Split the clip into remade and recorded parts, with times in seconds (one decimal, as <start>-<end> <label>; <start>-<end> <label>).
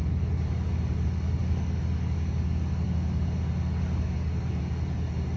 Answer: 0.0-5.4 remade